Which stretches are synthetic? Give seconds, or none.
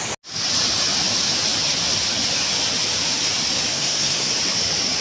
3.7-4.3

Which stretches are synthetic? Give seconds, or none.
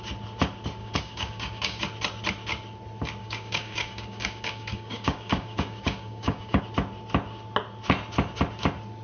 0.8-1.8; 3.2-6.6